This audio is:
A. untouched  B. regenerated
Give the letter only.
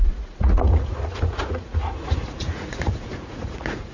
B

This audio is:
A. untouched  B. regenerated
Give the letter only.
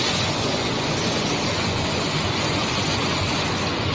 B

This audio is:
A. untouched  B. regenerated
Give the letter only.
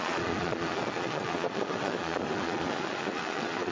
B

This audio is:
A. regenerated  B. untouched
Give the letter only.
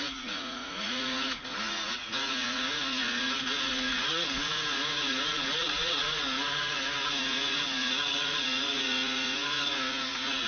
A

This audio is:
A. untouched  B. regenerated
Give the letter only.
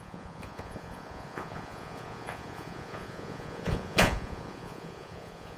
B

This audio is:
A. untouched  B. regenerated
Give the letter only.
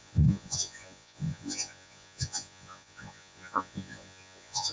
B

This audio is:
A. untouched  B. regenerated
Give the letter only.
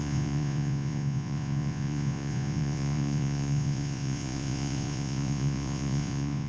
B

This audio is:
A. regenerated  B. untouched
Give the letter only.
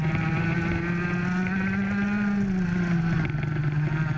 B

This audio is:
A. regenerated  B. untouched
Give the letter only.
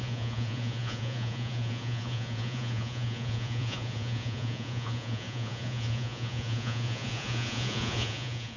A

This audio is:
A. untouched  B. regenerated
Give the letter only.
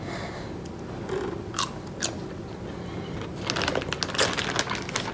A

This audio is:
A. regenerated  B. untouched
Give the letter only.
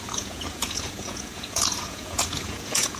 A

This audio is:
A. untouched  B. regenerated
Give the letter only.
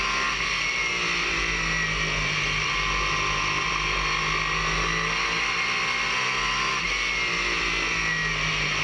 A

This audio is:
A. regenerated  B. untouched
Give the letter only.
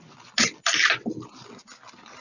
B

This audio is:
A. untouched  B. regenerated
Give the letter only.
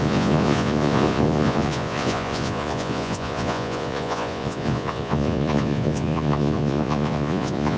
B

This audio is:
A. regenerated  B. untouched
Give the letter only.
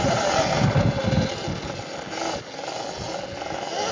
B